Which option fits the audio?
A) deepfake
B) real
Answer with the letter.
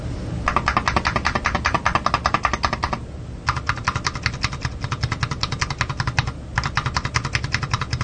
B